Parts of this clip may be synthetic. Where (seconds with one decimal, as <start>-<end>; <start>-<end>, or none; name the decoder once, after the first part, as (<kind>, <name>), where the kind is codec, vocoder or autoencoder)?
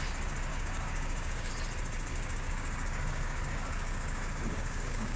0.5-1.5 (codec, DAC); 2.1-5.2